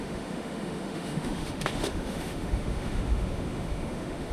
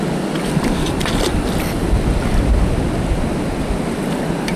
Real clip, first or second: second